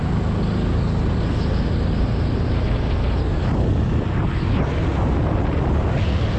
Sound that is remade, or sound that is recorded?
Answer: recorded